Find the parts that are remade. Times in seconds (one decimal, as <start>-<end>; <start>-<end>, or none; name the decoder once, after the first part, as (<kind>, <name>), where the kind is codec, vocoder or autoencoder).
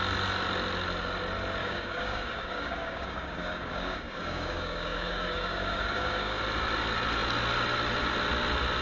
1.6-6.4 (codec, DAC)